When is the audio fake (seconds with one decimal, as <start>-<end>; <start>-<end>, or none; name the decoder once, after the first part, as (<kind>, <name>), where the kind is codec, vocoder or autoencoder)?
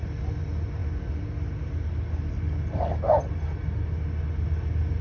none